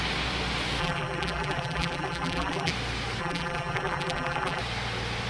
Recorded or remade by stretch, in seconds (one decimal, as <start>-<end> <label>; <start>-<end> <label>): 0.0-0.8 recorded; 0.8-2.7 remade; 2.7-3.2 recorded; 3.2-4.6 remade; 4.6-5.3 recorded